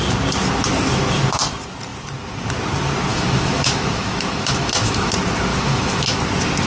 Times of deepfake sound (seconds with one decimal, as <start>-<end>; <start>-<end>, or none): 3.1-5.1; 5.5-6.2